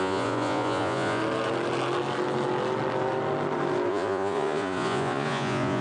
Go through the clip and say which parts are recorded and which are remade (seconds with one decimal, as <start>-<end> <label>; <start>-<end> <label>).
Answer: 0.0-1.2 remade; 1.2-3.9 recorded; 3.9-5.8 remade